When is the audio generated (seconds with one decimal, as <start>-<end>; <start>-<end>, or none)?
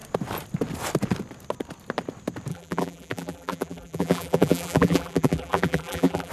2.5-6.3